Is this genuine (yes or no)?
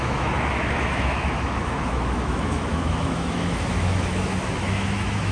no